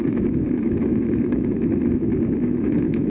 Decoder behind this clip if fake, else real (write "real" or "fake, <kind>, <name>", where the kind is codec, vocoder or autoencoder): fake, autoencoder, DAC-VAE